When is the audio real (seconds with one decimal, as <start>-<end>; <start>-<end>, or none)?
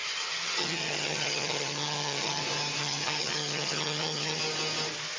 2.4-2.8; 4.4-5.2